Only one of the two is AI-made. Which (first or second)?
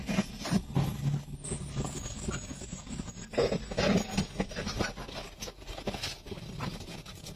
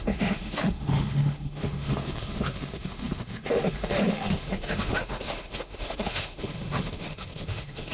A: second